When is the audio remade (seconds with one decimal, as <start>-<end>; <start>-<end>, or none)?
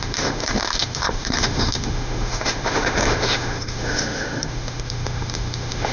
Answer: 0.0-5.9